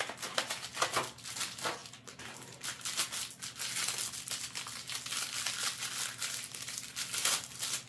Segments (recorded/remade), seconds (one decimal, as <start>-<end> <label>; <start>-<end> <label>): 0.0-7.9 recorded